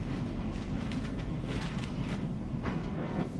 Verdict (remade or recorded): remade